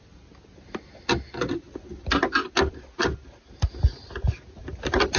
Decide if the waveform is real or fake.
real